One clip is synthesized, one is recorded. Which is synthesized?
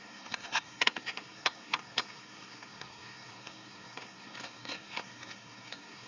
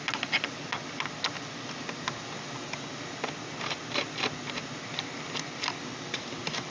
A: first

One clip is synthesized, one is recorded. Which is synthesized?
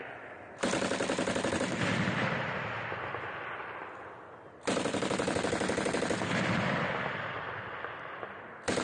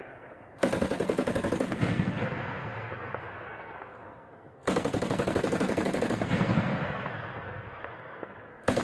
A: second